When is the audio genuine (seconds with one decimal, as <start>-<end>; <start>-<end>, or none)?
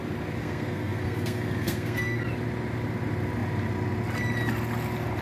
0.0-0.4; 2.2-5.2